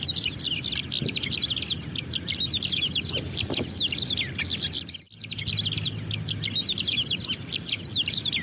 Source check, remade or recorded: recorded